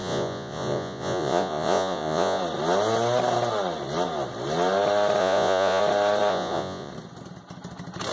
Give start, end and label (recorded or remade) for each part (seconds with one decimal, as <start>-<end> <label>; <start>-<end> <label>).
0.0-2.4 remade; 2.4-5.2 recorded; 5.2-5.8 remade; 5.8-6.3 recorded; 6.3-6.9 remade; 6.9-8.1 recorded